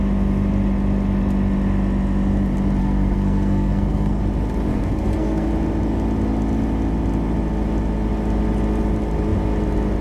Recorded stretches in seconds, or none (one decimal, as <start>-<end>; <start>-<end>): 0.0-2.8; 4.2-4.7; 5.5-10.0